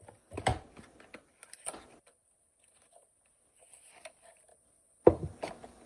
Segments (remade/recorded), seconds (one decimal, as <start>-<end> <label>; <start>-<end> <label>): 0.0-5.9 recorded